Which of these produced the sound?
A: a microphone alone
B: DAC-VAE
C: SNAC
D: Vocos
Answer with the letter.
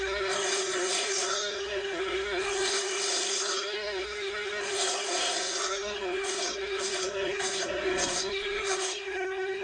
C